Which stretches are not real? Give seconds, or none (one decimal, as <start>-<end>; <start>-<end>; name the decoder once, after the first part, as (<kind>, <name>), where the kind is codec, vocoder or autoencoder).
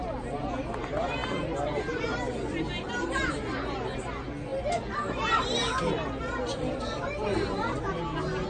none